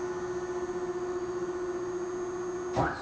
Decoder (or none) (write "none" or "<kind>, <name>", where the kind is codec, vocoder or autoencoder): none